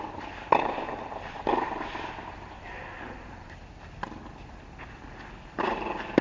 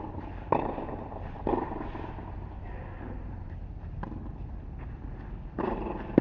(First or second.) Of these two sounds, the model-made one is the second